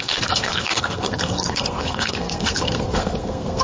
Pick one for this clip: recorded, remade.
remade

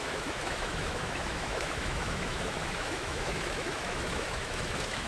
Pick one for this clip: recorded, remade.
remade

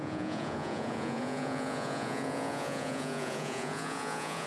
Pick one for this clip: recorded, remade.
remade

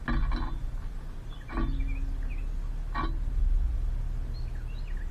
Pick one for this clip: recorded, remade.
recorded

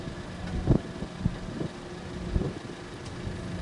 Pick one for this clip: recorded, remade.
recorded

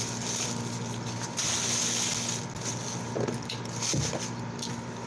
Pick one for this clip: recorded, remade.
recorded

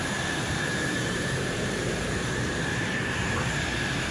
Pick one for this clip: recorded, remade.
remade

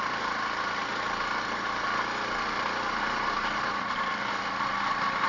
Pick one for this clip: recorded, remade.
recorded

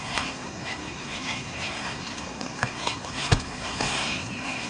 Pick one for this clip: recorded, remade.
remade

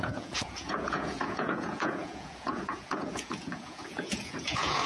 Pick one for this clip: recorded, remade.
remade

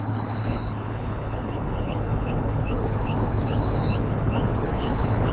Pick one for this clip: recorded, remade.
remade